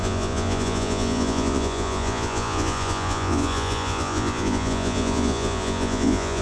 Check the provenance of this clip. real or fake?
fake